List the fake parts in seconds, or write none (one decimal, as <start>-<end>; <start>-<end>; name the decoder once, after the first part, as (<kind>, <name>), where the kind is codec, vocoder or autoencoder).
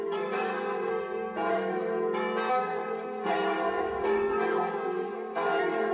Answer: 0.0-0.9 (codec, SNAC); 1.5-1.9; 2.5-5.9